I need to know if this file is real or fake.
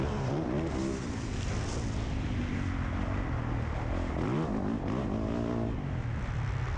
real